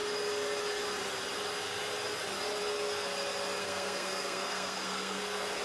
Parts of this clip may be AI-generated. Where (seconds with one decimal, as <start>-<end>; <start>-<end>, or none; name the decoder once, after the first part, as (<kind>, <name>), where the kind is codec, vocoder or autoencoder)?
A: 3.6-5.6 (codec, SNAC)